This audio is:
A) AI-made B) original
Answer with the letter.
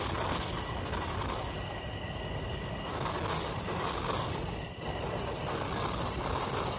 B